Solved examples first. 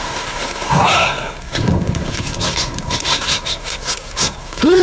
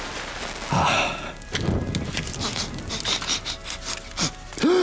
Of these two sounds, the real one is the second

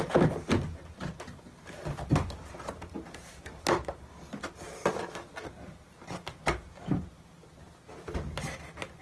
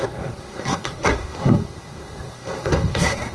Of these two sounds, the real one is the first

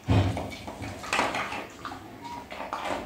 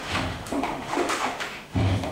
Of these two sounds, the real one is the first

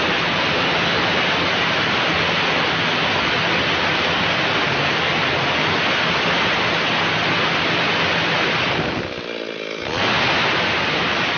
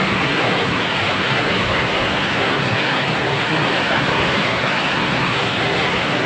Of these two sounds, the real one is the first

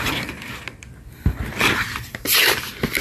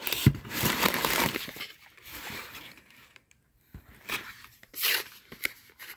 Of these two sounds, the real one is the first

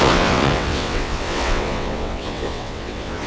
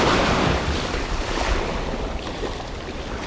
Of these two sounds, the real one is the second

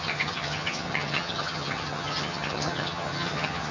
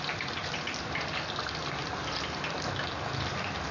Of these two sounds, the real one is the second